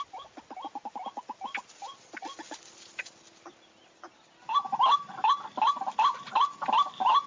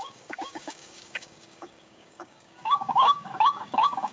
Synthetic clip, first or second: second